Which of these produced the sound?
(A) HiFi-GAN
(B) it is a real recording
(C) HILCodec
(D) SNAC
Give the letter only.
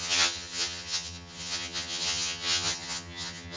A